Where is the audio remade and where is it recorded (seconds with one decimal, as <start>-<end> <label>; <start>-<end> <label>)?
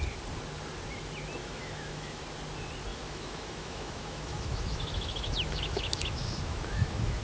0.0-1.4 recorded; 1.4-2.2 remade; 2.2-2.9 recorded; 2.9-7.2 remade